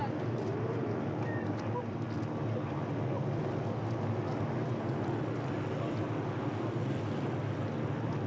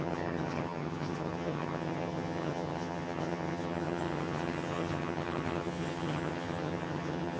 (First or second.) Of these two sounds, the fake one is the second